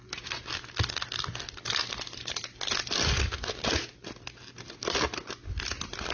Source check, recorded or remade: recorded